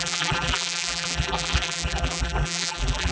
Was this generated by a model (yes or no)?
yes